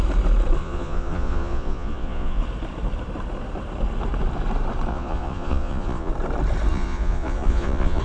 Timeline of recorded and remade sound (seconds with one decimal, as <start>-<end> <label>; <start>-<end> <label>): 0.0-0.6 recorded; 0.6-2.4 remade; 2.4-4.9 recorded; 4.9-6.1 remade; 6.1-6.7 recorded; 6.7-8.0 remade